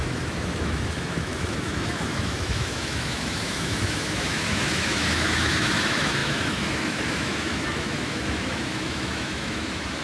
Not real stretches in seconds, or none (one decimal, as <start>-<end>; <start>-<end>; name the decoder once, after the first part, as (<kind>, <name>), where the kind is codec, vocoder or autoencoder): 0.0-10.0 (autoencoder, DAC-VAE)